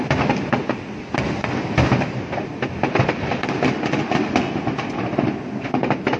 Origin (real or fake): real